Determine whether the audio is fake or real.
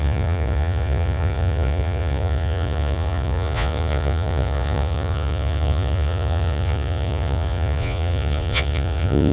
fake